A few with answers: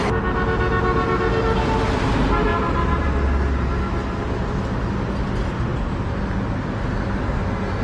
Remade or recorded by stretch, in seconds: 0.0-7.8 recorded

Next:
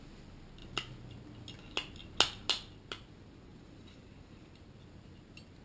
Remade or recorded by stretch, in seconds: 0.0-3.5 recorded; 3.5-4.5 remade; 4.5-5.6 recorded

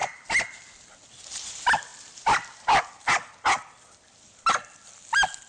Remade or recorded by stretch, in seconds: 0.0-5.5 recorded

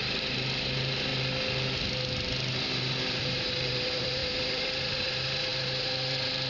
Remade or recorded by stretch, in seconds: 0.0-1.1 remade; 1.1-2.9 recorded; 2.9-6.5 remade

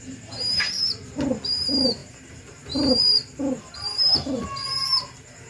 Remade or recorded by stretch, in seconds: 0.0-5.5 remade

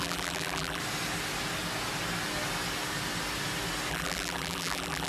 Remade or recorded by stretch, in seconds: 0.0-0.8 remade; 0.8-3.9 recorded; 3.9-5.1 remade

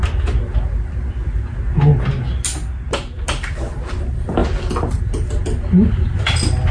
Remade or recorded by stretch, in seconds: 0.0-4.0 recorded; 4.0-4.4 remade; 4.4-5.9 recorded; 5.9-6.7 remade

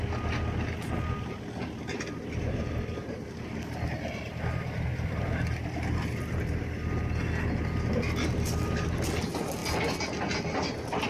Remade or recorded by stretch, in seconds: 0.0-4.9 recorded; 4.9-6.4 remade; 6.4-11.1 recorded